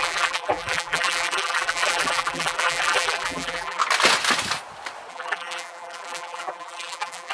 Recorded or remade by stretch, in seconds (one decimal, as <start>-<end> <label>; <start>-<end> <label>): 0.0-3.8 remade; 3.8-5.1 recorded; 5.1-7.3 remade